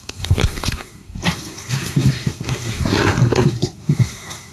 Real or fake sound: fake